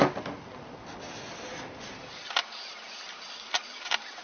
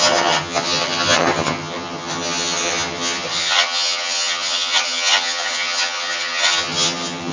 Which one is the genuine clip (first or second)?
first